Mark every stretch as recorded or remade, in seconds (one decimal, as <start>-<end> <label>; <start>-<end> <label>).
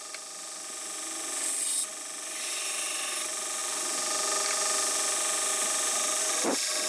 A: 0.0-6.9 recorded